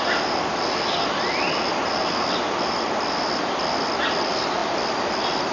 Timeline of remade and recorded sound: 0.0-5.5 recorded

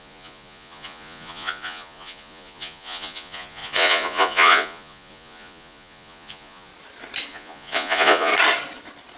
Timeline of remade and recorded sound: 0.0-6.7 remade; 6.7-7.3 recorded; 7.3-8.3 remade; 8.3-9.2 recorded

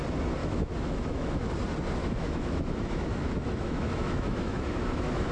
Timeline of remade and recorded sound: 0.0-0.4 recorded; 0.4-1.5 remade; 1.5-2.0 recorded; 2.0-5.3 remade

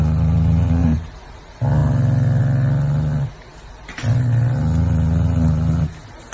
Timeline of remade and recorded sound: 0.0-0.8 recorded; 0.8-1.4 remade; 1.4-6.3 recorded